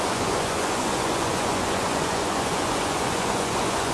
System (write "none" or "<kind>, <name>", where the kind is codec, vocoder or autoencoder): vocoder, Vocos